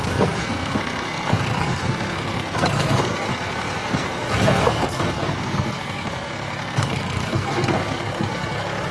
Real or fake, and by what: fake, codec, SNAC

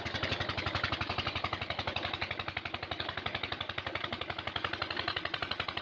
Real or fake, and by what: fake, vocoder, BigVGAN v2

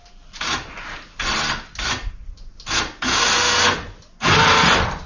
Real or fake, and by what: real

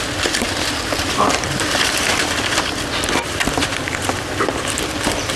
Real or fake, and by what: fake, vocoder, BigVGAN v2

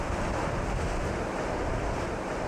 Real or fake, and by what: real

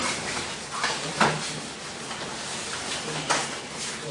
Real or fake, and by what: fake, vocoder, BigVGAN v2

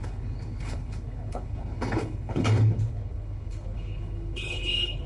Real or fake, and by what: fake, codec, HILCodec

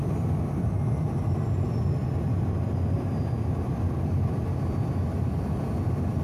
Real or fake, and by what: fake, vocoder, BigVGAN v2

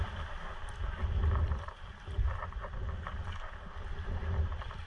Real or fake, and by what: real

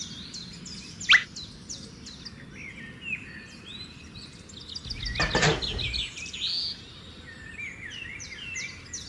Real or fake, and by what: real